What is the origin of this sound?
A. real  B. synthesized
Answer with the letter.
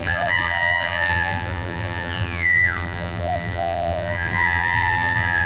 B